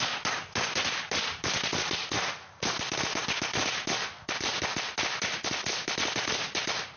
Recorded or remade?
recorded